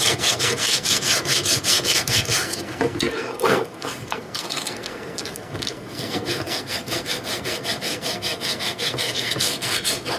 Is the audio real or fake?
fake